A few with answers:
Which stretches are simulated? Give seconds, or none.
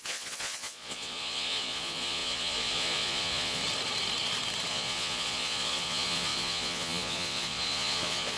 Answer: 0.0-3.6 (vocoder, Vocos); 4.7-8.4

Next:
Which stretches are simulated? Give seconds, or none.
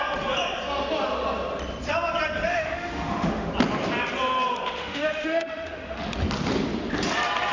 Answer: 2.5-3.5 (autoencoder, DAC-VAE); 4.8-6.0